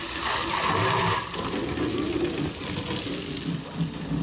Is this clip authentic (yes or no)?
yes